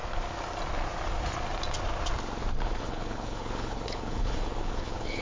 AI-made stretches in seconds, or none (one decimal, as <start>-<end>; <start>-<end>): 2.5-5.2